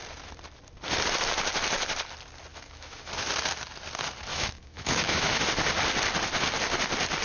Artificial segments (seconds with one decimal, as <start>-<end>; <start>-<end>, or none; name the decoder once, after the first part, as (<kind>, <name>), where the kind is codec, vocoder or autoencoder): 2.5-3.1 (autoencoder, DAC-VAE); 4.3-5.4